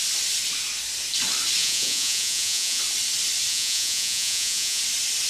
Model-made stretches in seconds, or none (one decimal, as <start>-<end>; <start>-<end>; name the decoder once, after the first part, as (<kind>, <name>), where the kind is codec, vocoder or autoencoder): 1.6-2.8 (vocoder, Vocos); 3.5-4.8